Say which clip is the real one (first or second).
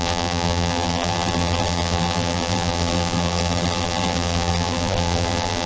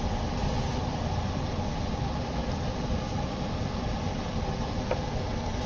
second